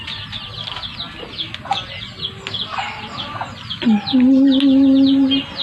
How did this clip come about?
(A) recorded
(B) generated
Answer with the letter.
A